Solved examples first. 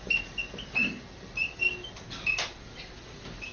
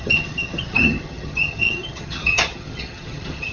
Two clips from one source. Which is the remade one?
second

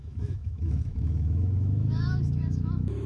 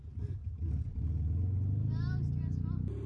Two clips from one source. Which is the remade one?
first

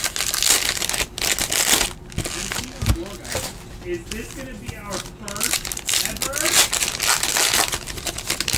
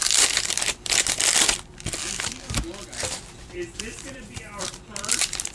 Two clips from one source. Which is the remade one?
second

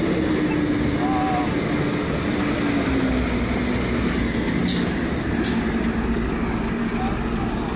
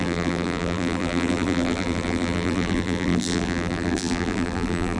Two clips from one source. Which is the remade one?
second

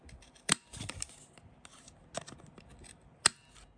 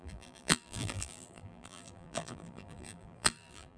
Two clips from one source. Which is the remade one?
second